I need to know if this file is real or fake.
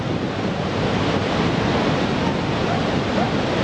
real